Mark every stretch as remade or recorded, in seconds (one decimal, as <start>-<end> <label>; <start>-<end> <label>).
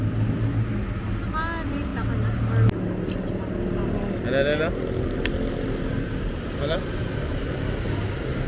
0.0-8.5 recorded